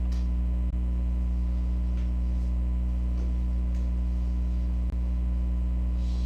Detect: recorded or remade recorded